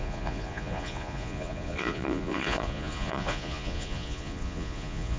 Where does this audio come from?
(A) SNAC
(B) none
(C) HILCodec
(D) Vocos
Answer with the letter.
D